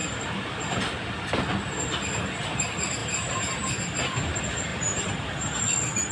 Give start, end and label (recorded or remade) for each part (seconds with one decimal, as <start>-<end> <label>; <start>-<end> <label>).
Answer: 0.0-3.0 recorded; 3.0-4.0 remade; 4.0-4.7 recorded; 4.7-5.5 remade; 5.5-6.1 recorded